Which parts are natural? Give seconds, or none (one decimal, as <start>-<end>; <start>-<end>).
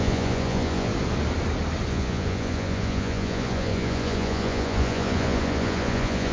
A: 0.9-1.9